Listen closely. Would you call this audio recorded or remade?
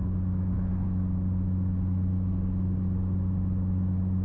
recorded